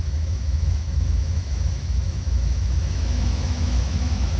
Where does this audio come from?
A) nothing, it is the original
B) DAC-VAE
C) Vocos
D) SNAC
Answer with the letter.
B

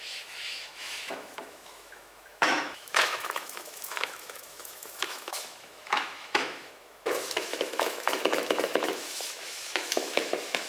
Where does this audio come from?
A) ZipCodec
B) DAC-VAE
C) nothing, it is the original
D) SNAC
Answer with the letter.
B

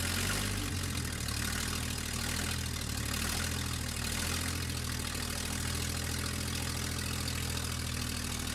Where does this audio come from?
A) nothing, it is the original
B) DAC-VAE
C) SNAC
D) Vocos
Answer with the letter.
A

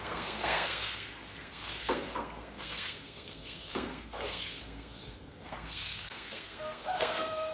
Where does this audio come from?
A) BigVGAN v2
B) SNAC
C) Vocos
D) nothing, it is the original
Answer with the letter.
B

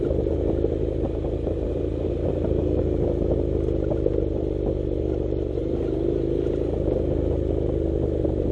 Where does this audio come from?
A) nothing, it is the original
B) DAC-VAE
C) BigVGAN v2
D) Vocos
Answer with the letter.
A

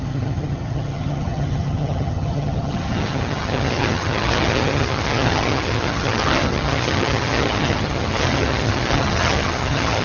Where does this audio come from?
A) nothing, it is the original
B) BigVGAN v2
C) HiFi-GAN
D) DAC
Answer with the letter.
C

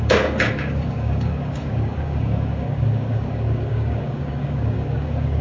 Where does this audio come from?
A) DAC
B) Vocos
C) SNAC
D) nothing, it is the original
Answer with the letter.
A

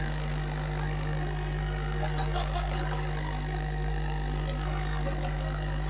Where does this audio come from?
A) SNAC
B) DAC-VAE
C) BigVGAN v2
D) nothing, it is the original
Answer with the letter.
A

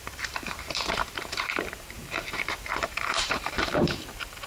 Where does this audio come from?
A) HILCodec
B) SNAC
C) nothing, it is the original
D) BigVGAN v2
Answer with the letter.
D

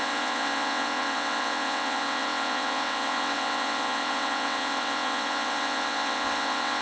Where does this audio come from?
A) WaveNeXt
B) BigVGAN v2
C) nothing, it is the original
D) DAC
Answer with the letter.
A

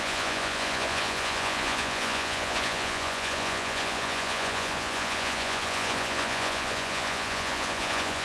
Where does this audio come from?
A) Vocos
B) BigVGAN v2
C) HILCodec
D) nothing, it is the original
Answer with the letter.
A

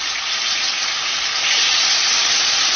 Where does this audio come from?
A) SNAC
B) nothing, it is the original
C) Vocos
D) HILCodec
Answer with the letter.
B